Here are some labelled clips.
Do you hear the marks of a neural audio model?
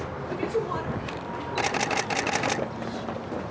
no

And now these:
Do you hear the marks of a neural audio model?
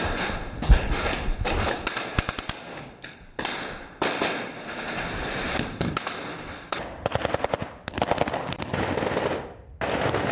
no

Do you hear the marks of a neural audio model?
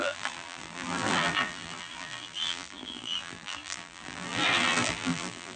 yes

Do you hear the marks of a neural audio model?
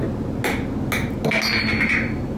no